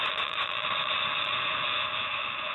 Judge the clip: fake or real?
fake